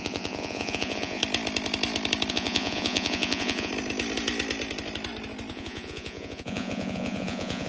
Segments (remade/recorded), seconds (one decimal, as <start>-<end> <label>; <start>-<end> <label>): 0.0-1.2 remade; 1.2-2.3 recorded; 2.3-3.7 remade; 3.7-5.5 recorded; 5.5-7.7 remade